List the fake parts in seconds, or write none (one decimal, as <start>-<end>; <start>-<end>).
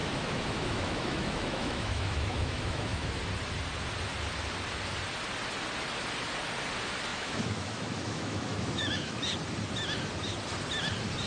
0.0-3.2; 7.1-9.2